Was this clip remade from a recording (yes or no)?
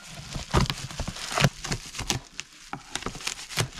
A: no